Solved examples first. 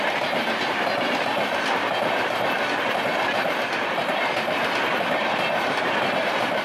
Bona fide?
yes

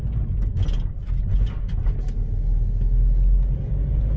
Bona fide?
yes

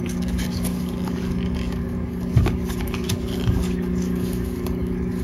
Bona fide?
no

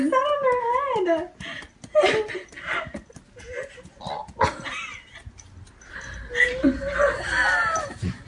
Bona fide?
yes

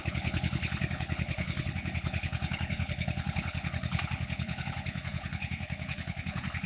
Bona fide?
no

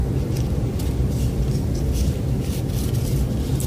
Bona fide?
yes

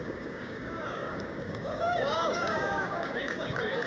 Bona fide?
no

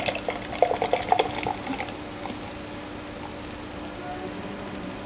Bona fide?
yes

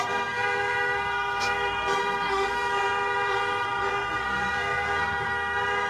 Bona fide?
no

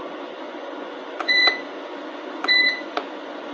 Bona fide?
no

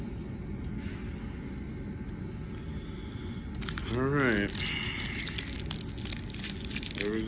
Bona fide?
yes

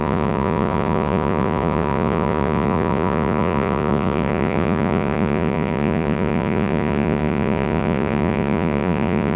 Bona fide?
no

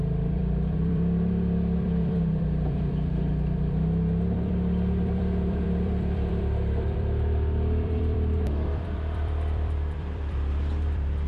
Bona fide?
no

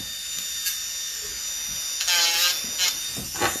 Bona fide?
yes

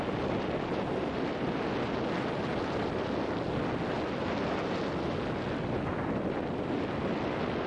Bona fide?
yes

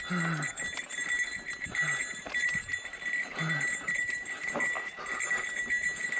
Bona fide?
yes